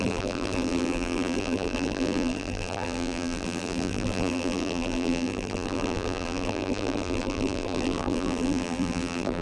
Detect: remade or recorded remade